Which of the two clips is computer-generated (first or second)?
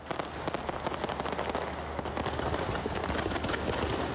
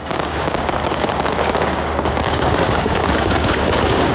second